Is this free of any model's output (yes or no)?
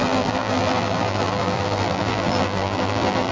no